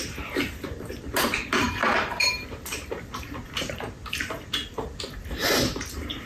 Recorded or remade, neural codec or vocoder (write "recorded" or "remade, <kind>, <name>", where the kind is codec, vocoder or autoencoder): remade, vocoder, BigVGAN v2